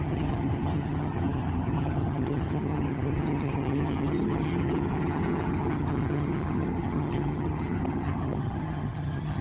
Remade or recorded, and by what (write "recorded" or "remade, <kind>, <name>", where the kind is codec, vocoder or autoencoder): remade, vocoder, HiFi-GAN